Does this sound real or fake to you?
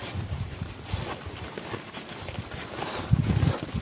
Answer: real